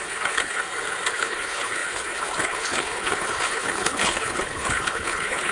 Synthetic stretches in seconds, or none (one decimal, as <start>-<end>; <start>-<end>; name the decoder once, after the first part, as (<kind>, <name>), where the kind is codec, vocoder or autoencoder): 0.0-0.6 (codec, HILCodec); 1.1-5.5